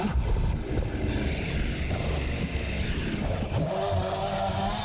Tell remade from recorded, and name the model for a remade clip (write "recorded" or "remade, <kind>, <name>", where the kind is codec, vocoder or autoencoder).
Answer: recorded